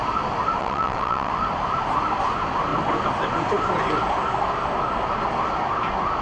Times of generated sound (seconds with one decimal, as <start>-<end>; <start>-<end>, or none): 0.6-1.3